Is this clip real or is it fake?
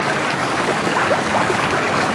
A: fake